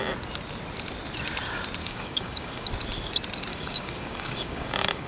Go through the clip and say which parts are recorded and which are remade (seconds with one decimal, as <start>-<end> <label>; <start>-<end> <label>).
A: 0.0-1.8 recorded; 1.8-2.7 remade; 2.7-3.5 recorded; 3.5-5.1 remade

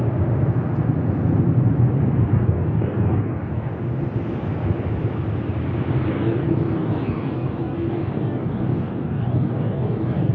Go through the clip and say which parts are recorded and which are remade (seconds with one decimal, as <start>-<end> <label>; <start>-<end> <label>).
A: 0.0-2.3 recorded; 2.3-3.7 remade; 3.7-6.1 recorded; 6.1-10.3 remade